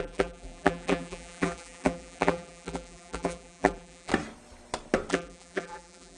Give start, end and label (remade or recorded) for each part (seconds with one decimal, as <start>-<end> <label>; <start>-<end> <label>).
0.0-4.1 remade; 4.1-5.1 recorded; 5.1-6.2 remade